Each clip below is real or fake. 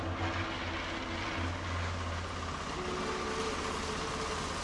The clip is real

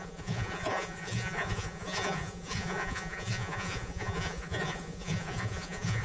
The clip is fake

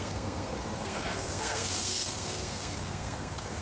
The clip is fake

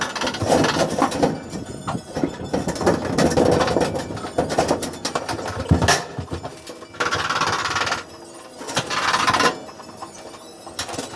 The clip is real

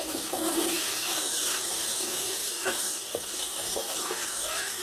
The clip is fake